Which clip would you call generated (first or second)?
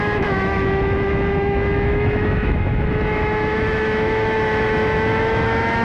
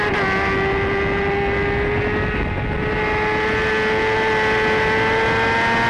first